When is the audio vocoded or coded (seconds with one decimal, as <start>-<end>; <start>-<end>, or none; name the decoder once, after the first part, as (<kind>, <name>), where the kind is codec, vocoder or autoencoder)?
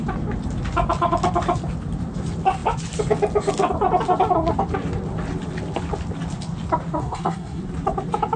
7.0-7.6 (codec, SNAC)